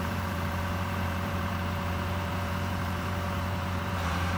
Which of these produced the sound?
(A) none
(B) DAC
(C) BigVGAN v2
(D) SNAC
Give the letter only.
C